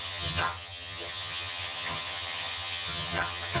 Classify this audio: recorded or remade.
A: remade